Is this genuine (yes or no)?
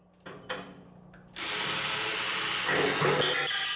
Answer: yes